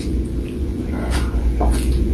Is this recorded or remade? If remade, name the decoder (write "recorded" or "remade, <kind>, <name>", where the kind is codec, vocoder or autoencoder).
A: remade, vocoder, Vocos